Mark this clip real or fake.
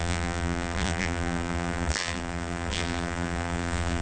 fake